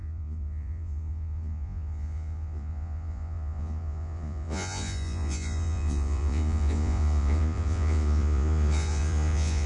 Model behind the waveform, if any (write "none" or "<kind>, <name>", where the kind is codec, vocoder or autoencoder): vocoder, Vocos